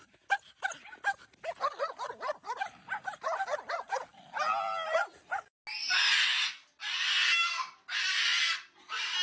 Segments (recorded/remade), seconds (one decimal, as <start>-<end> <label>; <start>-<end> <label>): 0.0-9.2 recorded